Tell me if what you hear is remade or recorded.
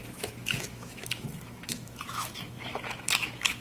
remade